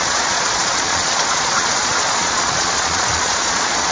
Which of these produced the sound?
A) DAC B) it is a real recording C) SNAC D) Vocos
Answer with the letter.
D